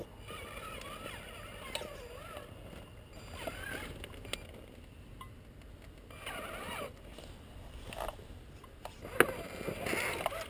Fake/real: real